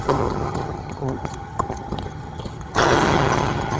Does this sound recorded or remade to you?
remade